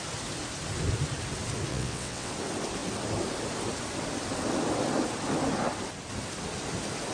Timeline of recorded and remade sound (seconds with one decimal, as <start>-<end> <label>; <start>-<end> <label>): 0.0-1.7 recorded; 1.7-2.3 remade; 2.3-7.1 recorded